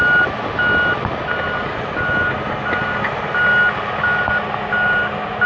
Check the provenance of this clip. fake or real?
real